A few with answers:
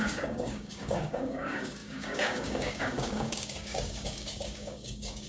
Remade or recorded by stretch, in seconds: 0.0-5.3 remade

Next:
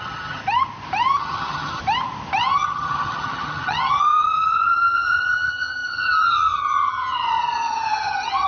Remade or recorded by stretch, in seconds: 0.0-0.4 remade; 0.4-1.2 recorded; 1.2-1.8 remade; 1.8-2.4 recorded; 2.4-8.5 remade

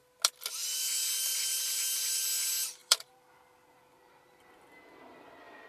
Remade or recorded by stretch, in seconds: 0.0-2.8 recorded; 2.8-3.8 remade; 3.8-5.7 recorded

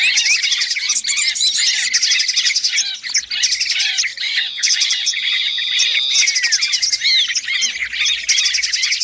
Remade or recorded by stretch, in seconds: 0.0-4.1 recorded; 4.1-6.0 remade; 6.0-9.0 recorded

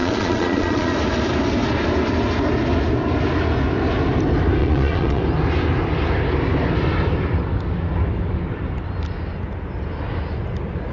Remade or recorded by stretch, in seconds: 0.0-0.9 remade; 0.9-4.6 recorded; 4.6-5.2 remade; 5.2-10.9 recorded

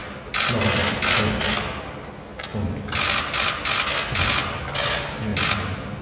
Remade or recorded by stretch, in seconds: 0.0-6.0 recorded

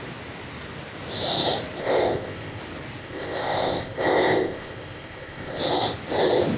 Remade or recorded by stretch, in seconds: 0.0-1.8 recorded; 1.8-2.6 remade; 2.6-3.0 recorded; 3.0-5.6 remade; 5.6-6.6 recorded